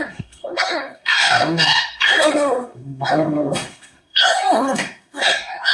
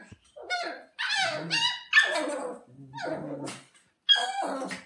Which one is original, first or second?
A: second